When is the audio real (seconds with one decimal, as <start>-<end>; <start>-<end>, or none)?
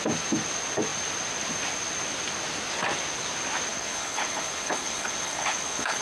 0.0-3.7